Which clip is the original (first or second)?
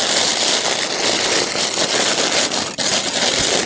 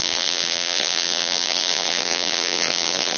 first